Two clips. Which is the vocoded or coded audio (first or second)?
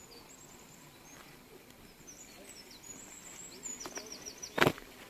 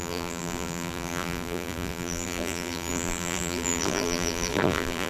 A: second